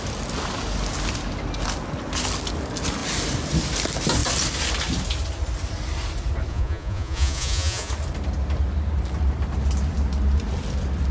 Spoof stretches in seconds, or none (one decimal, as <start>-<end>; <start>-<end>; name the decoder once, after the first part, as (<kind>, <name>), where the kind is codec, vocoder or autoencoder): 6.5-7.9 (vocoder, Vocos)